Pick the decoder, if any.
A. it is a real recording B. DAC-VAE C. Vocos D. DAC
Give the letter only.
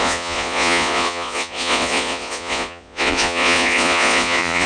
C